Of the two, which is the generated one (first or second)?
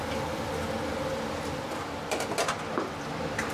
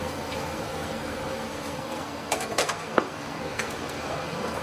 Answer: second